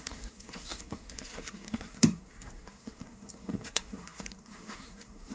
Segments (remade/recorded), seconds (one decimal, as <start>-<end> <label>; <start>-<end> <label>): 0.0-5.3 remade